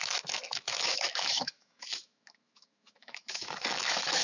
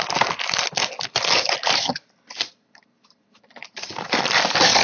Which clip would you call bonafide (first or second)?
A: second